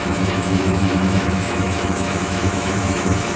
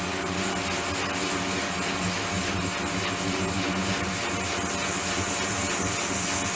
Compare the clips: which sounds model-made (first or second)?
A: first